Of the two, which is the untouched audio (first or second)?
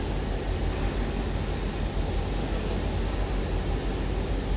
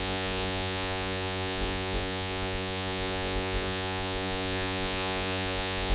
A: first